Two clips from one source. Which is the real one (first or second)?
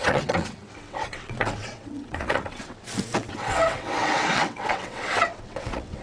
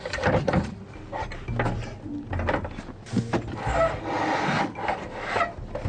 second